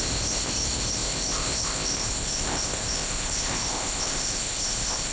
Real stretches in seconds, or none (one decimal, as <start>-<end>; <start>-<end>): none